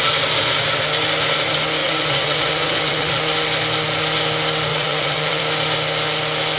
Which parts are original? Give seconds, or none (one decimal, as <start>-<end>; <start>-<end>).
0.0-1.8; 3.1-4.7; 5.4-6.6